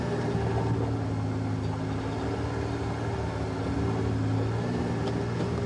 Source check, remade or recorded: recorded